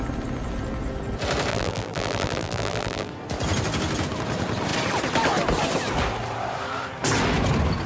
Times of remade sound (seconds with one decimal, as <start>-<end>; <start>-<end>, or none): 1.5-3.1